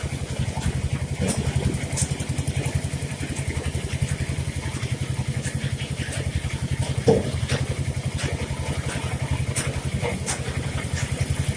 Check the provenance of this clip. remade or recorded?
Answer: recorded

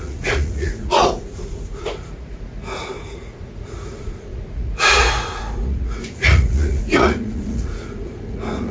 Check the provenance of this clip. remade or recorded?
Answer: remade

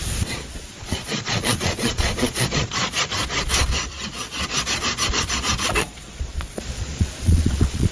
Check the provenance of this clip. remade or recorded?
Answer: remade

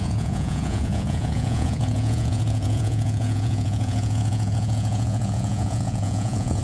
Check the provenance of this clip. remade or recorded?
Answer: remade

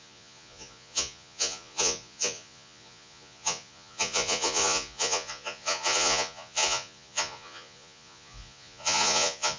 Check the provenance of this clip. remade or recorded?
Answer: remade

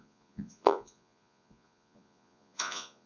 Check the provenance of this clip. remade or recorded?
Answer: remade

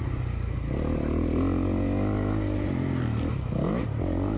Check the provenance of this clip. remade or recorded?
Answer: recorded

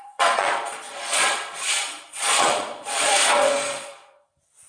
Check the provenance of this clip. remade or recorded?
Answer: remade